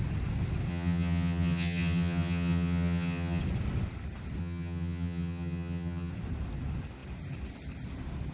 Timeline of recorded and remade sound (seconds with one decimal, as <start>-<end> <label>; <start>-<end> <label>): 0.0-0.7 recorded; 0.7-3.4 remade; 3.4-4.4 recorded; 4.4-6.1 remade; 6.1-8.3 recorded